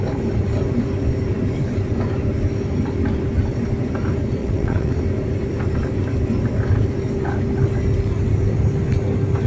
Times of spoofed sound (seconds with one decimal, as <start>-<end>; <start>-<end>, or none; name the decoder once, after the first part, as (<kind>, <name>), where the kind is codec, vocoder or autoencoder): 4.4-5.0 (vocoder, WaveNeXt)